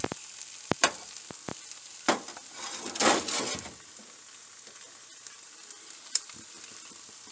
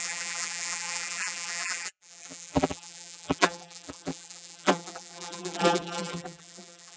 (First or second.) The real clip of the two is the first